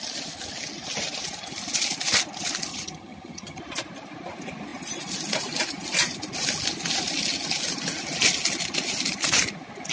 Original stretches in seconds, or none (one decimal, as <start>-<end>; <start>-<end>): 0.0-2.7; 3.6-9.9